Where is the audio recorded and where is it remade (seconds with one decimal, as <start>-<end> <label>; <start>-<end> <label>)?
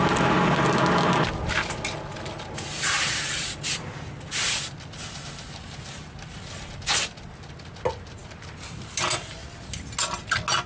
0.0-10.7 recorded